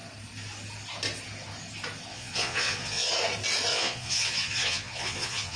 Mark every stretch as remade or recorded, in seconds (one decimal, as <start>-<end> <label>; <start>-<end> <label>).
0.0-2.1 recorded; 2.1-3.1 remade; 3.1-3.7 recorded; 3.7-5.6 remade